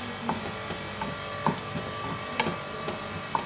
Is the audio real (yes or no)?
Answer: yes